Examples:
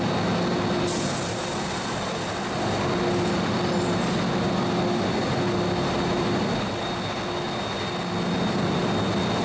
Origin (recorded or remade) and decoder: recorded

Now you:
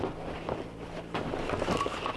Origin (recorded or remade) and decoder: recorded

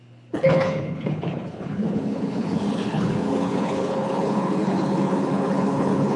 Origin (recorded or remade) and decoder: remade, codec, HILCodec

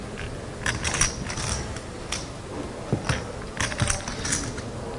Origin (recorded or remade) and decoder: recorded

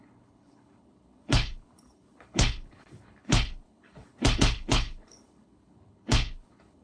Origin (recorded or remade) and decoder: remade, codec, HILCodec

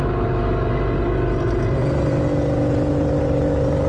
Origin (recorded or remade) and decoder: recorded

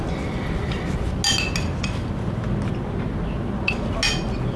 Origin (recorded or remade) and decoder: recorded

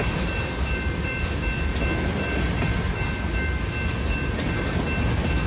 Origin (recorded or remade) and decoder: recorded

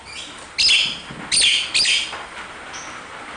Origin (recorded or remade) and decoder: recorded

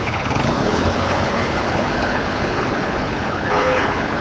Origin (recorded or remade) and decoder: remade, codec, HILCodec